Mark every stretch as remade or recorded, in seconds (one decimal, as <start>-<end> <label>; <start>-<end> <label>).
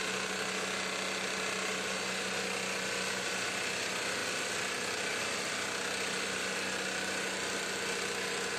0.0-8.6 recorded